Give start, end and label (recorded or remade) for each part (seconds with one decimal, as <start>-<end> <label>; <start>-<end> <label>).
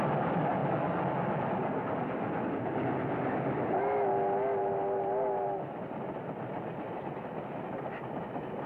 0.0-8.7 recorded